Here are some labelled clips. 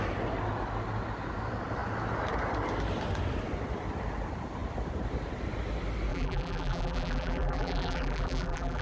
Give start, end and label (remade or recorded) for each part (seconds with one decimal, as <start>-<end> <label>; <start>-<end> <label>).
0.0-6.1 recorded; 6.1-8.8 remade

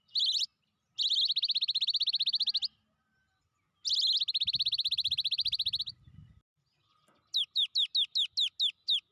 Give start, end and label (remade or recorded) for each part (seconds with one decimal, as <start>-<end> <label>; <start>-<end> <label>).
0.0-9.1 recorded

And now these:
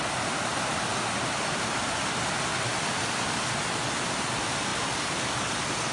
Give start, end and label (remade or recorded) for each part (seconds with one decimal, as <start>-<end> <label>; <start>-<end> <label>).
0.0-5.9 recorded

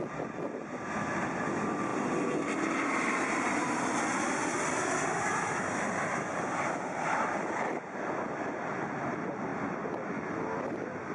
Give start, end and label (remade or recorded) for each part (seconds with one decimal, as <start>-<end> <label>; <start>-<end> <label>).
0.0-1.9 recorded; 1.9-4.0 remade; 4.0-11.1 recorded

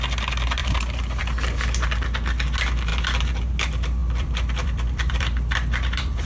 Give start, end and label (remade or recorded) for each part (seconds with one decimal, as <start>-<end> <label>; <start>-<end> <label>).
0.0-0.6 recorded; 0.6-1.2 remade; 1.2-4.0 recorded; 4.0-6.3 remade

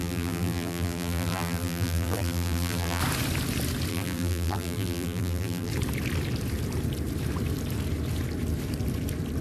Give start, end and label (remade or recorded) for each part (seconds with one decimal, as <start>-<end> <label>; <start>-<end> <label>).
0.0-3.0 remade; 3.0-3.9 recorded; 3.9-5.7 remade; 5.7-9.4 recorded

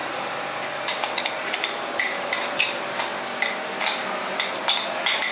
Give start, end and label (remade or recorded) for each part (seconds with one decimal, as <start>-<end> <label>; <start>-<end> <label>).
0.0-3.1 remade; 3.1-5.3 recorded